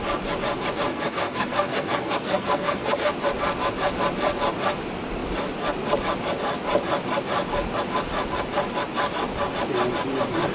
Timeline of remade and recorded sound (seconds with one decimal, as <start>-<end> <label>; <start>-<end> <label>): 0.0-0.9 recorded; 0.9-3.1 remade; 3.1-10.5 recorded